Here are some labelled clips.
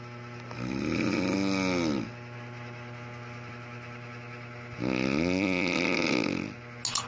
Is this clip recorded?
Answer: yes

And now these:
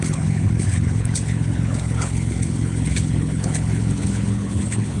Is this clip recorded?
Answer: no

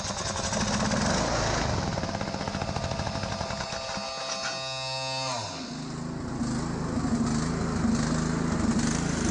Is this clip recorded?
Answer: yes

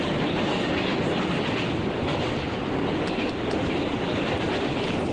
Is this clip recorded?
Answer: yes